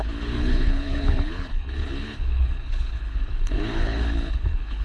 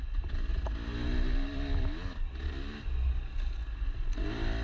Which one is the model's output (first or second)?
first